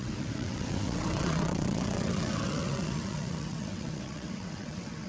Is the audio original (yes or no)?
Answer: no